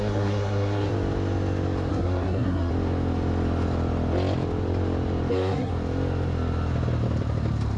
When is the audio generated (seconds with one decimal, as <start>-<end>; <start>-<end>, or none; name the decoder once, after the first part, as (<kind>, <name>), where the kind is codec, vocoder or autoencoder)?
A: 0.0-0.9 (codec, SNAC); 1.9-2.7; 5.3-5.7